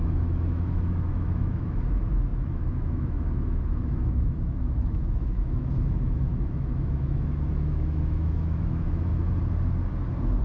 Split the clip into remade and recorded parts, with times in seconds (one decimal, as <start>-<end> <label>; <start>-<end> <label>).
0.0-9.1 remade; 9.1-10.4 recorded